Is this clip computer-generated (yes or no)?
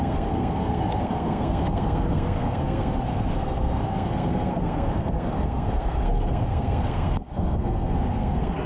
yes